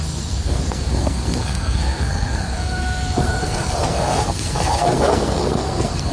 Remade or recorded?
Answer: remade